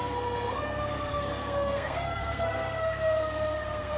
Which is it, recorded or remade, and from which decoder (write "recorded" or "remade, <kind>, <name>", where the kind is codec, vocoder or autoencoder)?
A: remade, codec, SNAC